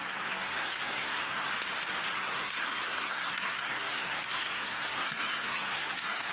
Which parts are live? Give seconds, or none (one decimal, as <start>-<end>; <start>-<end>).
1.5-2.1